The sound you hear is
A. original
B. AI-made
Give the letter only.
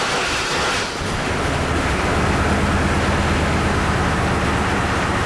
A